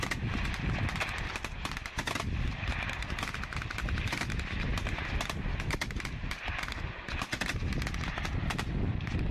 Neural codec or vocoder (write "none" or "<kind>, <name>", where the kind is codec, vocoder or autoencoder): none